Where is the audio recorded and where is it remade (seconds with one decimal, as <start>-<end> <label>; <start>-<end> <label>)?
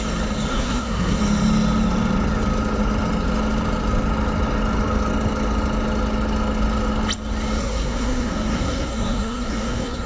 0.0-0.5 recorded; 0.5-1.2 remade; 1.2-7.6 recorded; 7.6-10.1 remade